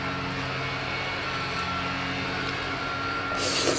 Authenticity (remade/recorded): recorded